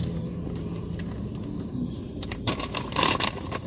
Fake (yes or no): yes